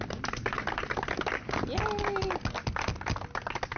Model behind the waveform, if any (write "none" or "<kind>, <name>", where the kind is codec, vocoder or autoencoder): none